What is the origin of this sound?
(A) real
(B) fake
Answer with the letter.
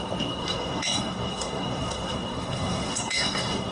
B